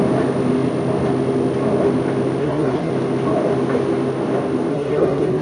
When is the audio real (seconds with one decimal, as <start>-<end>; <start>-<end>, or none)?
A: 0.0-2.4; 2.9-4.7